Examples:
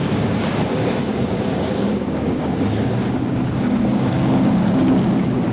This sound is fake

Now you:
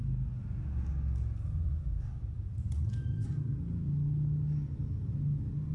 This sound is real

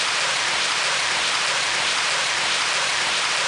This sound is real